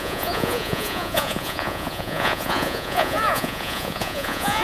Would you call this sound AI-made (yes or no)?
yes